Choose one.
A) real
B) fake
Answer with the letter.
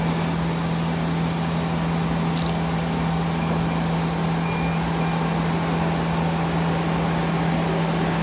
A